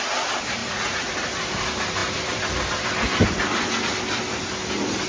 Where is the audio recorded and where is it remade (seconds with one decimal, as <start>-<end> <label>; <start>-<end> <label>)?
0.0-0.6 recorded; 0.6-1.1 remade; 1.1-5.1 recorded